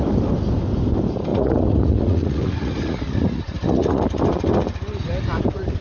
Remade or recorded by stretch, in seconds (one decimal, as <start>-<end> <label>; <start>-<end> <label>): 0.0-1.3 recorded; 1.3-4.0 remade; 4.0-5.8 recorded